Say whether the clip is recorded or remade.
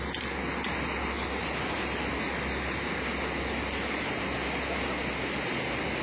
recorded